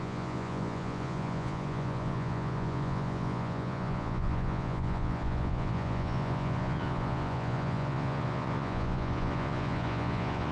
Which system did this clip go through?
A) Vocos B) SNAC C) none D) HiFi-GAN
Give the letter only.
A